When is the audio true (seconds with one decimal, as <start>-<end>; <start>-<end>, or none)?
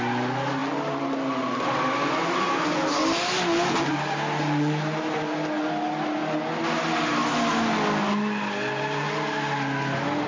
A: 0.0-10.3